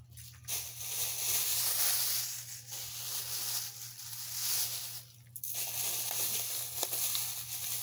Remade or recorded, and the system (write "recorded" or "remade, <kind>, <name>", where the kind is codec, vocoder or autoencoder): recorded